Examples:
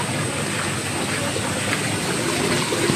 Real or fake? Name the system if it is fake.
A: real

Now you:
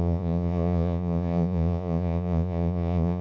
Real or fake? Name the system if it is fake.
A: fake, vocoder, Vocos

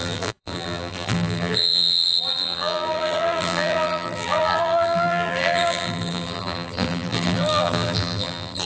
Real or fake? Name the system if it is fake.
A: fake, vocoder, BigVGAN v2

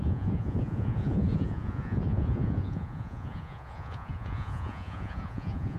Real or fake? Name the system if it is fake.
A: fake, vocoder, Vocos